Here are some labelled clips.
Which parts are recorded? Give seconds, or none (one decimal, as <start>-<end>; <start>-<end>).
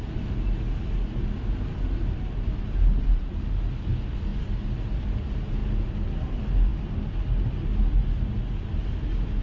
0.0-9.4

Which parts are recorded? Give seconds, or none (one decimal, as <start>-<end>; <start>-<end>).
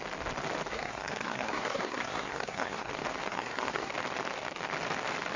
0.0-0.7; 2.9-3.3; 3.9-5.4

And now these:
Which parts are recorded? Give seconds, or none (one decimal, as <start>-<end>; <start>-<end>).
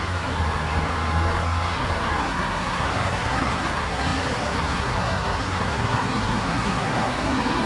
none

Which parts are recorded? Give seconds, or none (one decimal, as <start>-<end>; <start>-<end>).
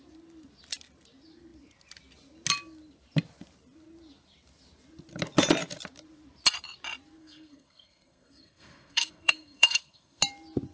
0.0-7.2; 10.2-10.7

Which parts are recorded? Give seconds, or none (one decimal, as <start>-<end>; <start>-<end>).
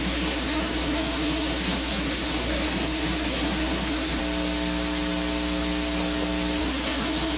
4.2-6.6